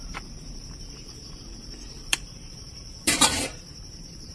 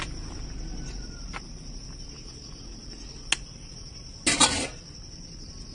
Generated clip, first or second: first